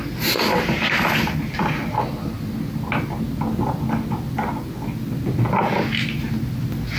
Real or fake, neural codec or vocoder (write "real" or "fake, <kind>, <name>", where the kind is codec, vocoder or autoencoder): real